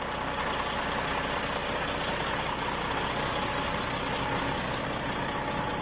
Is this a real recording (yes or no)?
yes